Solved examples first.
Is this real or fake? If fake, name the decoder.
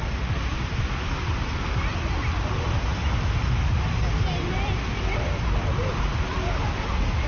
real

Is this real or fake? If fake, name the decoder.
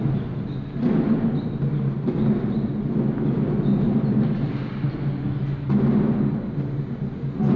real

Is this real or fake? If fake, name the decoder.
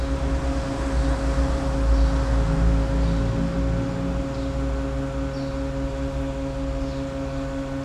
real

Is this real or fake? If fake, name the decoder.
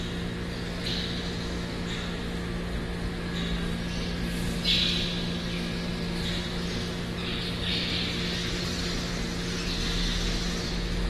real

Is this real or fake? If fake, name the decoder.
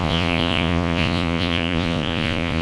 fake, vocoder, Vocos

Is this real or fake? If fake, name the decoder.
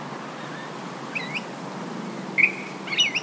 real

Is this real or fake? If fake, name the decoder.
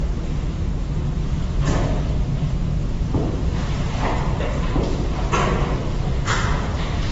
real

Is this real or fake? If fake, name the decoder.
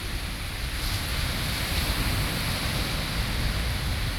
real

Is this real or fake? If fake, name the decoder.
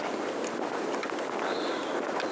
real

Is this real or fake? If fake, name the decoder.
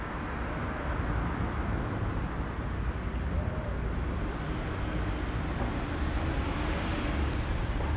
real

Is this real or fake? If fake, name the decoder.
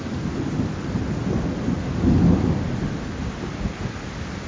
real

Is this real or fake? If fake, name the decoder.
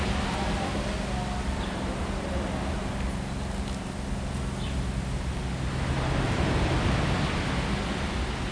real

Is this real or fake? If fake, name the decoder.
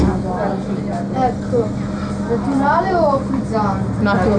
real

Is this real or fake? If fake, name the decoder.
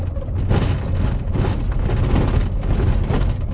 real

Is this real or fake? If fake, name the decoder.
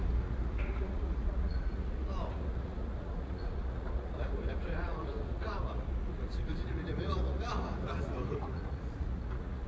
fake, vocoder, Vocos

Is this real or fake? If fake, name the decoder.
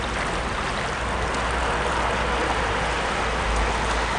real